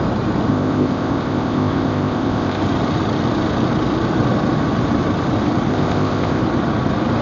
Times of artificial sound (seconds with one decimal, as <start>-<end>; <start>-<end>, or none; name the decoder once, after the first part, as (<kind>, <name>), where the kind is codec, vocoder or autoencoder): 0.5-2.6 (codec, ZipCodec); 5.7-6.4